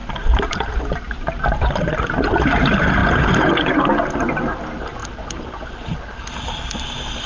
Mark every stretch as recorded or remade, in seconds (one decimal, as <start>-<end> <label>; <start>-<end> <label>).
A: 0.0-1.9 remade; 1.9-5.0 recorded; 5.0-6.0 remade; 6.0-7.3 recorded